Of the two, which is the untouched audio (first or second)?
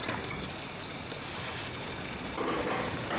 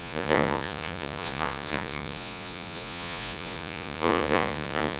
first